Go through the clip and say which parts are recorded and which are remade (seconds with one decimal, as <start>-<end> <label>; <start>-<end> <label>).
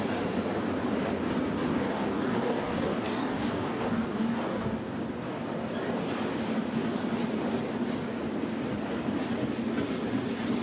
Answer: 0.0-1.7 recorded; 1.7-4.9 remade; 4.9-10.6 recorded